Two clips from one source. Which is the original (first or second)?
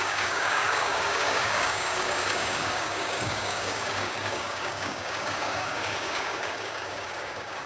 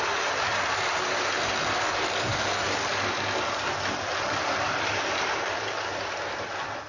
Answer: second